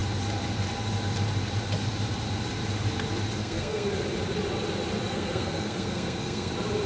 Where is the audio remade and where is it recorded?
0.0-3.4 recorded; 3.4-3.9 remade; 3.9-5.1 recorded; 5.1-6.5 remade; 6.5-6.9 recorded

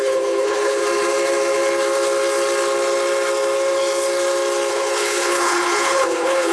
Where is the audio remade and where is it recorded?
0.0-0.8 remade; 0.8-4.7 recorded; 4.7-6.5 remade

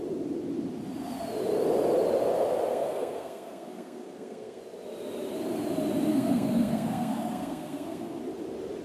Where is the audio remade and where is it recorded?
0.0-2.7 recorded; 2.7-4.6 remade; 4.6-6.1 recorded; 6.1-8.2 remade; 8.2-8.8 recorded